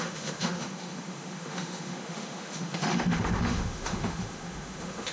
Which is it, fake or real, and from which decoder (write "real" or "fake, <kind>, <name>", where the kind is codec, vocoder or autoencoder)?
fake, autoencoder, DAC-VAE